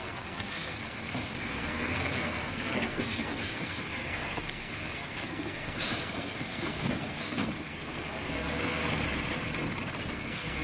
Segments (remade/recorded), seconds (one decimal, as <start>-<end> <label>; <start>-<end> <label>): 0.0-8.8 remade; 8.8-10.1 recorded; 10.1-10.6 remade